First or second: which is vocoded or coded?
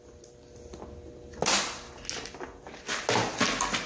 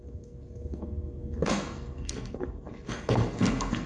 second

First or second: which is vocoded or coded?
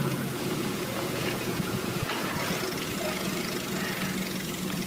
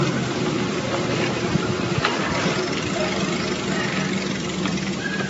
first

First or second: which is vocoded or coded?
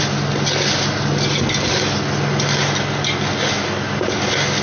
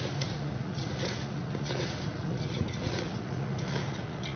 second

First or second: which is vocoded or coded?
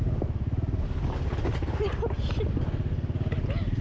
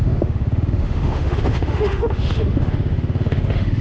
second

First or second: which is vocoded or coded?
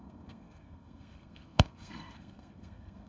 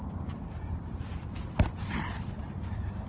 first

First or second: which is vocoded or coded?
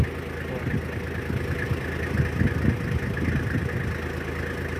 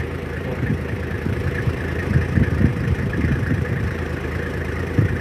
second